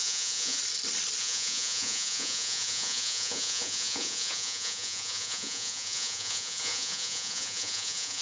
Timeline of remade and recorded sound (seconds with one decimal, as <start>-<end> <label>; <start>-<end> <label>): 0.0-0.6 remade; 0.6-1.2 recorded; 1.2-8.2 remade